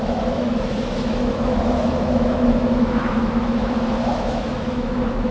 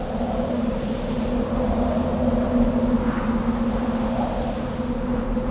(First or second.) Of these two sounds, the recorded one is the second